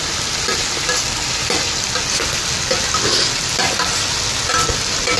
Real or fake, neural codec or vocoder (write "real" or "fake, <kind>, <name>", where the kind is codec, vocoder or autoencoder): real